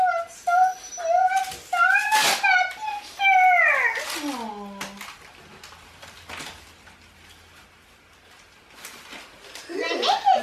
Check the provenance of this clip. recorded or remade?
recorded